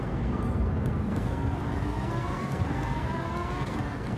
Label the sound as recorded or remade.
remade